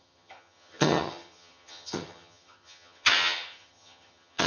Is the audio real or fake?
fake